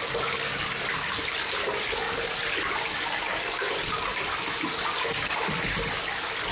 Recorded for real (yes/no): yes